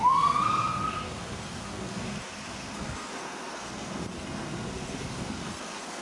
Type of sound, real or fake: fake